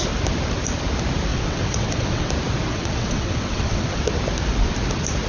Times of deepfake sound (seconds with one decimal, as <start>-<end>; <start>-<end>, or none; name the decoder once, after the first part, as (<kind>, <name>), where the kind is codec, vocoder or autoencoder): 1.3-2.3 (vocoder, WaveNeXt); 2.7-4.0